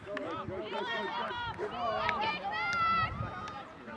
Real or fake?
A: fake